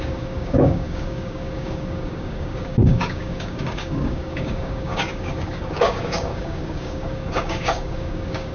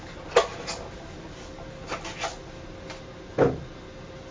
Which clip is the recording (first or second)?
second